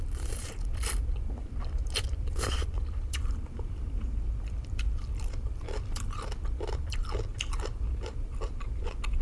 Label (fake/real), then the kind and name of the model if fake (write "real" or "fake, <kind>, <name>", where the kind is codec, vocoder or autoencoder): fake, vocoder, BigVGAN v2